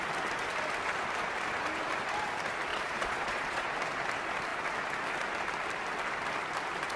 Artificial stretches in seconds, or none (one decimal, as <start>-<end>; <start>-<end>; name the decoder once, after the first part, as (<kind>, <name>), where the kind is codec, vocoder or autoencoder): 2.7-3.7 (vocoder, Vocos)